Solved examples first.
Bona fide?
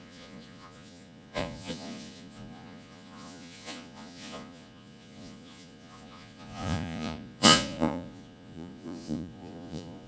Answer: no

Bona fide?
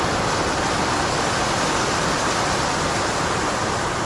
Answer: yes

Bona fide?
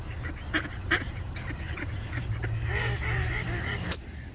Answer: no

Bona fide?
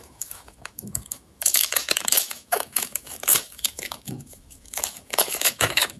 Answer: no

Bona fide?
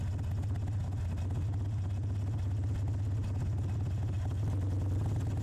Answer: yes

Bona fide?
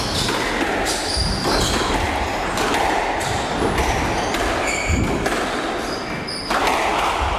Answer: yes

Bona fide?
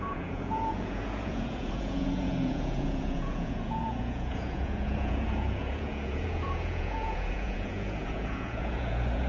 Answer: no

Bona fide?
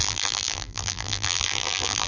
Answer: no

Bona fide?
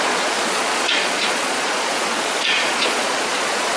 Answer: no